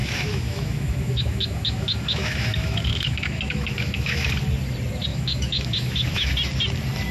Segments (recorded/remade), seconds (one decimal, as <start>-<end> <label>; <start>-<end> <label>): 0.0-4.3 remade; 4.3-5.1 recorded; 5.1-6.3 remade; 6.3-7.1 recorded